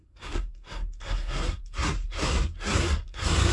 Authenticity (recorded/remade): remade